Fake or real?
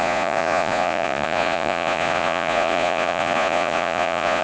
fake